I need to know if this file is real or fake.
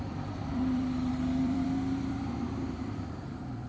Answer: fake